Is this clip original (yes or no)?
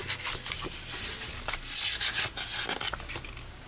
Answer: yes